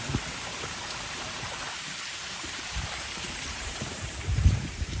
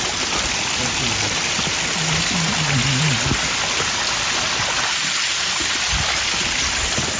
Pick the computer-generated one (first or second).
first